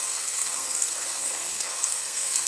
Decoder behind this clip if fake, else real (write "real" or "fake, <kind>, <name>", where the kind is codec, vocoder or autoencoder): fake, codec, SNAC